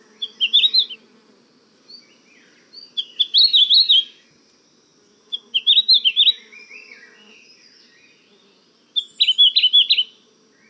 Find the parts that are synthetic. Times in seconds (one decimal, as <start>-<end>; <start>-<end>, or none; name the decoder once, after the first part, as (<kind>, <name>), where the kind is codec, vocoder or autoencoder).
none